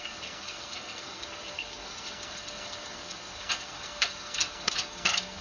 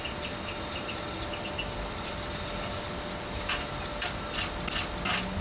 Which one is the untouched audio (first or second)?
second